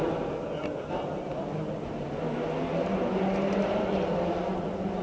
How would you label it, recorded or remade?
recorded